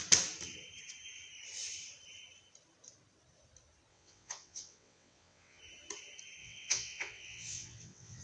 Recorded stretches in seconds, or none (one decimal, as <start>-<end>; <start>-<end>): 0.0-3.9; 5.6-6.4